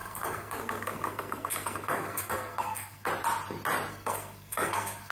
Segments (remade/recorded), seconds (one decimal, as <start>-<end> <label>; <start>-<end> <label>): 0.0-3.1 remade; 3.1-3.9 recorded; 3.9-5.1 remade